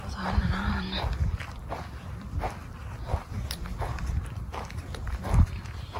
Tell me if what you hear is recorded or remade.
remade